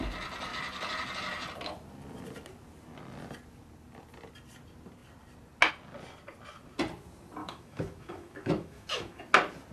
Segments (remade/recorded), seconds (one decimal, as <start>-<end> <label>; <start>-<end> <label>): 0.0-7.4 recorded; 7.4-9.2 remade; 9.2-9.7 recorded